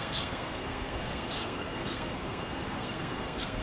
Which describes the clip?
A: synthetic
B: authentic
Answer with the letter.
A